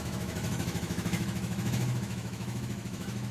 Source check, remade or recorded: remade